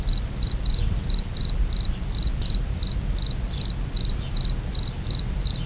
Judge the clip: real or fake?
real